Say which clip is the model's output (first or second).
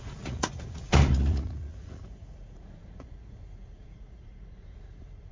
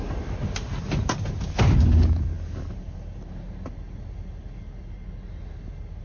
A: first